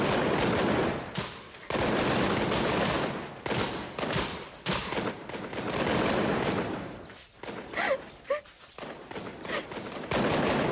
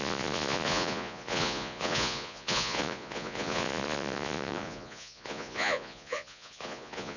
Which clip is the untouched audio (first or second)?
first